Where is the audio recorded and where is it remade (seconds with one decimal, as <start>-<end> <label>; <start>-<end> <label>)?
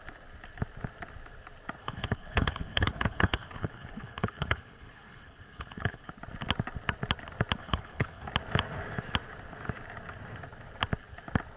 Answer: 0.0-1.8 recorded; 1.8-6.1 remade; 6.1-7.6 recorded; 7.6-8.3 remade; 8.3-11.6 recorded